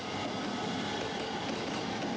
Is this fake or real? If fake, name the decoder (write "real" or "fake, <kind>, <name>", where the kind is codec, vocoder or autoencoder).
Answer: real